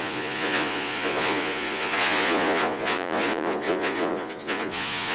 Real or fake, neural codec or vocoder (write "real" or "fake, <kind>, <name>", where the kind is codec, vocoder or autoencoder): fake, vocoder, Vocos